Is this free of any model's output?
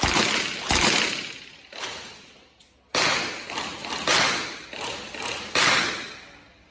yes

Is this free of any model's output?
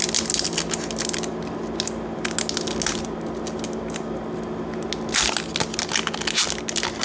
yes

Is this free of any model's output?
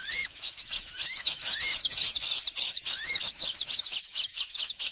no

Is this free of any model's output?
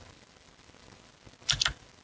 yes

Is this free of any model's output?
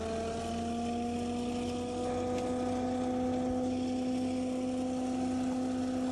yes